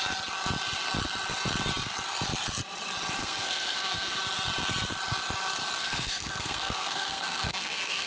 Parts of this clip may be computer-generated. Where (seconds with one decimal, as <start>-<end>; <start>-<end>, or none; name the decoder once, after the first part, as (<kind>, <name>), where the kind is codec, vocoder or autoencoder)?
3.2-4.2 (codec, SNAC); 5.8-8.1